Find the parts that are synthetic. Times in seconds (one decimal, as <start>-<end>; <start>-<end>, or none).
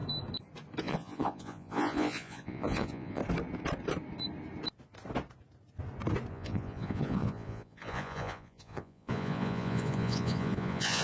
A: 0.8-3.2; 6.3-11.0